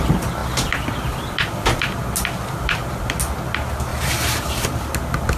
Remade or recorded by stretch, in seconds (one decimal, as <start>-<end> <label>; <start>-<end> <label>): 0.0-3.9 recorded; 3.9-4.8 remade; 4.8-5.4 recorded